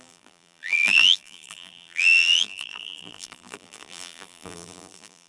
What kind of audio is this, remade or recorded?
remade